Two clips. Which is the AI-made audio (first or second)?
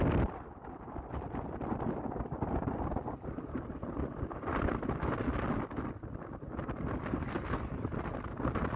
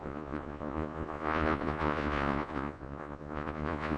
second